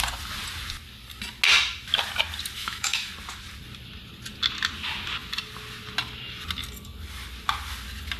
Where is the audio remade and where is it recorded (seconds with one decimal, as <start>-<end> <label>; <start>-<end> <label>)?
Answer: 0.0-2.6 recorded; 2.6-3.1 remade; 3.1-8.2 recorded